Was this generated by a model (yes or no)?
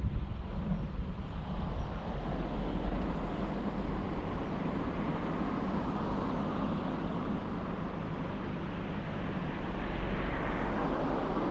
no